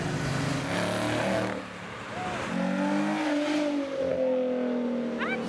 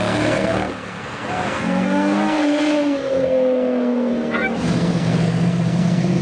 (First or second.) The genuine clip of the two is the first